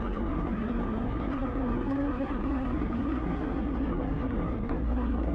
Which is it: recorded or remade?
remade